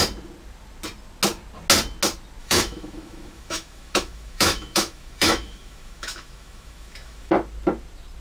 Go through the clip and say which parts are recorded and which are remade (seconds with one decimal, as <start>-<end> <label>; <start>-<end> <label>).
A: 0.0-2.4 recorded; 2.4-7.3 remade; 7.3-8.2 recorded